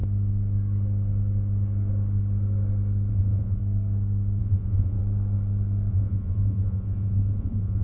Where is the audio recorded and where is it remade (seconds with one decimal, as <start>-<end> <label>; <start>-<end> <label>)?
0.0-3.1 recorded; 3.1-3.6 remade; 3.6-4.4 recorded; 4.4-5.0 remade; 5.0-5.9 recorded; 5.9-7.8 remade

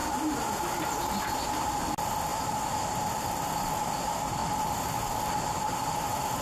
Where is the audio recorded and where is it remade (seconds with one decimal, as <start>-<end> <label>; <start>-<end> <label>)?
0.0-0.6 remade; 0.6-6.4 recorded